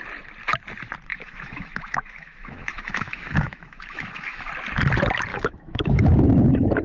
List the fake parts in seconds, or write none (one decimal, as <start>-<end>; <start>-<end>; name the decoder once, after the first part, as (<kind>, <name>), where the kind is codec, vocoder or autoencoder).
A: 1.1-4.5 (autoencoder, DAC-VAE); 5.3-6.1